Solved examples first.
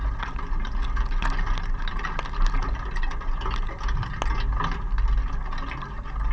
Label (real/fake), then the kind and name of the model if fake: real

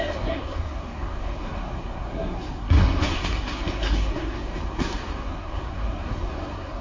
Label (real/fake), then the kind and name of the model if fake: fake, codec, SNAC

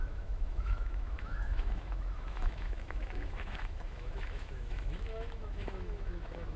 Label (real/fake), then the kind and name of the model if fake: fake, autoencoder, DAC-VAE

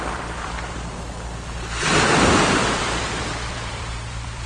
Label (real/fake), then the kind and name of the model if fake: fake, vocoder, BigVGAN v2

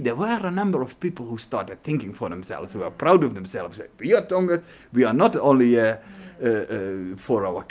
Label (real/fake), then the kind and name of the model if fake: real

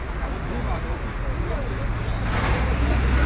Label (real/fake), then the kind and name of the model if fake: real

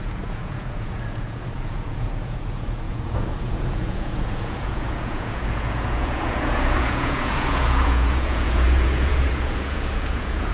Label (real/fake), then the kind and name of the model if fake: fake, vocoder, Vocos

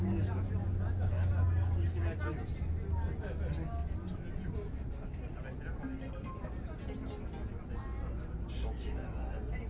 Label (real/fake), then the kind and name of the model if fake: real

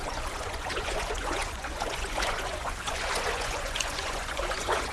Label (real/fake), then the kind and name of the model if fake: fake, vocoder, Vocos